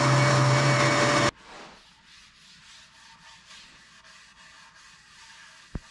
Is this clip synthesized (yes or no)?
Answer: no